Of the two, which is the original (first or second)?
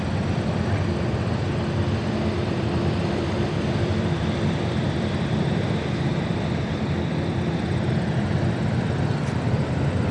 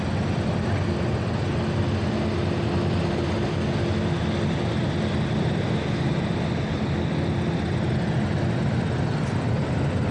second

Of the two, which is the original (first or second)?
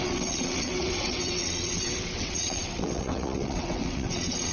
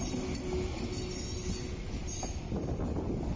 second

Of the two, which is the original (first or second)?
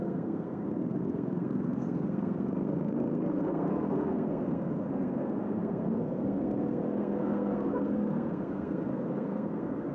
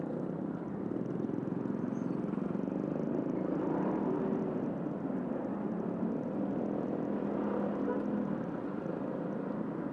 second